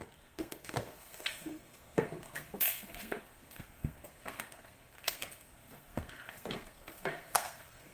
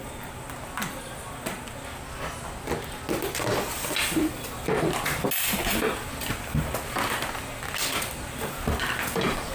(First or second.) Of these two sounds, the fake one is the first